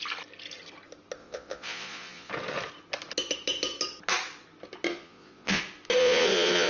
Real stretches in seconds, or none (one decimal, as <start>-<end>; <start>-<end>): 0.0-1.2; 2.3-4.9; 5.6-6.0